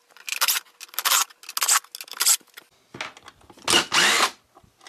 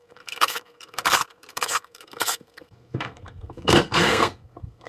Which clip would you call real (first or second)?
first